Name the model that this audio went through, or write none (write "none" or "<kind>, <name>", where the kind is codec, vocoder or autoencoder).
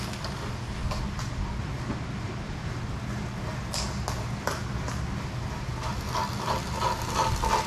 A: none